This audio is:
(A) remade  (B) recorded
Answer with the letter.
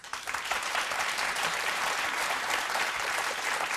A